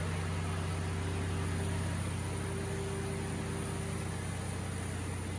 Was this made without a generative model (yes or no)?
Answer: yes